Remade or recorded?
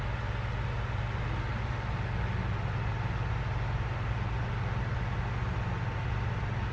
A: recorded